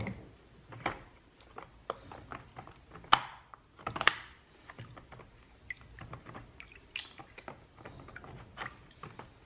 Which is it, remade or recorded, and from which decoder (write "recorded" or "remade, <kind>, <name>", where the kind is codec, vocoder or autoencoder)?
recorded